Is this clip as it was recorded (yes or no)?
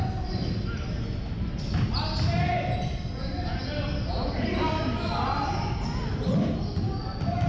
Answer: yes